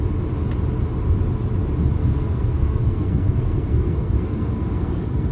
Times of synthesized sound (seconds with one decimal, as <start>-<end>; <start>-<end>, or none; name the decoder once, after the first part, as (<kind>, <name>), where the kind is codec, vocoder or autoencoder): 2.0-5.3 (codec, SNAC)